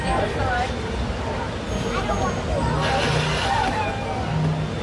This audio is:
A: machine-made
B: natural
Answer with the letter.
B